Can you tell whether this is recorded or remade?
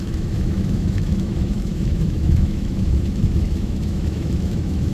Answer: remade